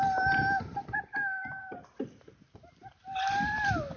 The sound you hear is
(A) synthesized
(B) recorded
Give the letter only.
A